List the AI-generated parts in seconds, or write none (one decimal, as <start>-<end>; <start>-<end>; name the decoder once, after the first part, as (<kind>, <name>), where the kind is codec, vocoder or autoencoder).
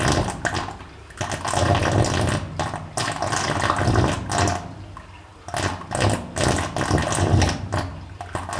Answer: none